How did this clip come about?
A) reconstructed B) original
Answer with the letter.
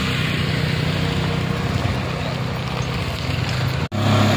B